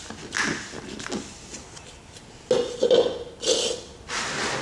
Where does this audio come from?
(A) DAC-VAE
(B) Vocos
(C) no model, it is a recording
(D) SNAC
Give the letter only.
C